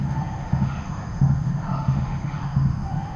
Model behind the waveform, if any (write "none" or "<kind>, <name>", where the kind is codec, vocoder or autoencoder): autoencoder, DAC-VAE